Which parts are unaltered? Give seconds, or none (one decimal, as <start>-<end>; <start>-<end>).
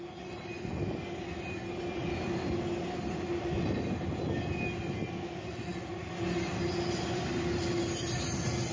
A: 0.0-8.7